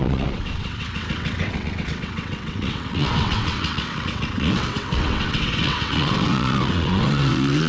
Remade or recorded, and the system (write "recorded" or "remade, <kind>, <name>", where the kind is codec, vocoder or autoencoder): remade, vocoder, WaveNeXt